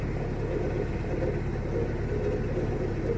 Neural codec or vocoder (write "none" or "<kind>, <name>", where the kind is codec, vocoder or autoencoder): none